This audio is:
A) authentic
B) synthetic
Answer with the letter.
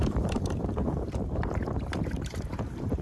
B